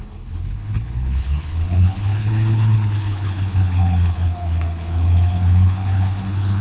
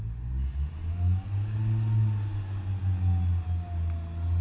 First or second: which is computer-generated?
first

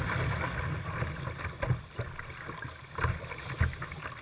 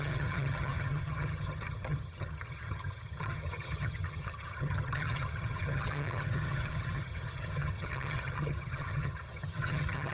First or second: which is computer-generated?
second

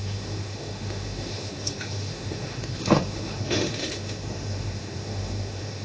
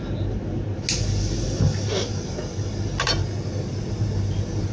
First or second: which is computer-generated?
first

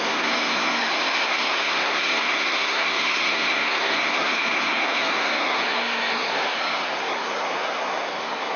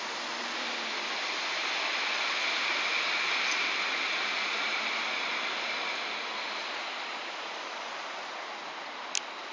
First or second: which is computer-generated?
first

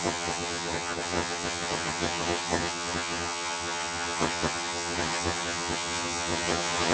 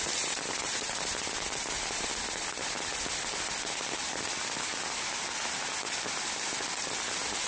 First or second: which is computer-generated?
first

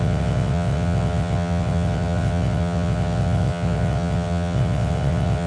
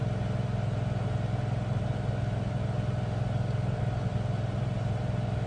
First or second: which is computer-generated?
first